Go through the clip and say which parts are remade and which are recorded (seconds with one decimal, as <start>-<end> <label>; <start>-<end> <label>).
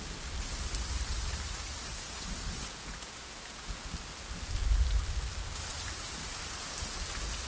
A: 0.0-1.9 recorded; 1.9-3.9 remade; 3.9-7.5 recorded